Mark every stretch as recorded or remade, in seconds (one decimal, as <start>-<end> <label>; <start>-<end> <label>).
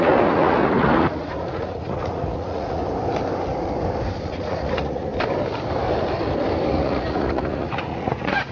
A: 0.0-2.8 remade; 2.8-4.2 recorded; 4.2-5.1 remade; 5.1-6.7 recorded; 6.7-8.5 remade